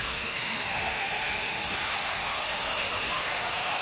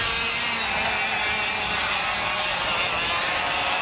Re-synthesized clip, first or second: first